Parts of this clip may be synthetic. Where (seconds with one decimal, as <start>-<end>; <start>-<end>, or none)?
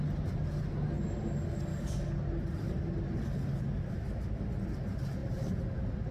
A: 1.7-2.2